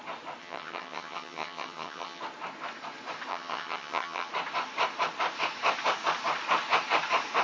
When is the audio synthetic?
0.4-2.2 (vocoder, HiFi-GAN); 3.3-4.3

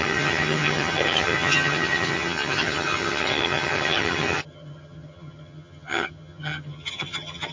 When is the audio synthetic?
0.0-7.5 (vocoder, HiFi-GAN)

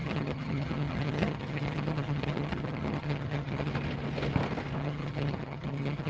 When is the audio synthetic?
0.0-3.7 (vocoder, HiFi-GAN); 4.8-6.1